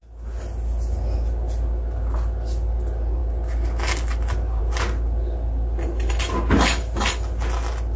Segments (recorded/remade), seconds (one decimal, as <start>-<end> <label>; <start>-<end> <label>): 0.0-8.0 recorded

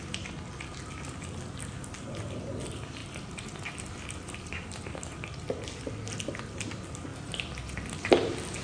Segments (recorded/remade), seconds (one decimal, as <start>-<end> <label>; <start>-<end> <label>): 0.0-8.6 recorded

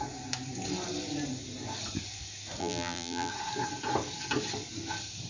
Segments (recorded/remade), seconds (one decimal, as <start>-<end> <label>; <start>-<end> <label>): 0.0-2.6 recorded; 2.6-3.3 remade; 3.3-5.3 recorded

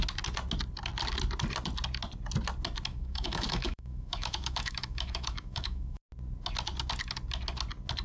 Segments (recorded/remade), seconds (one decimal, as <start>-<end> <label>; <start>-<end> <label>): 0.0-2.9 recorded; 2.9-6.0 remade; 6.0-8.0 recorded

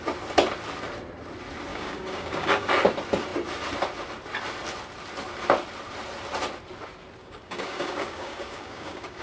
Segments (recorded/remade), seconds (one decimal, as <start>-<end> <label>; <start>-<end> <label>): 0.0-1.7 recorded; 1.7-2.7 remade; 2.7-7.2 recorded; 7.2-9.2 remade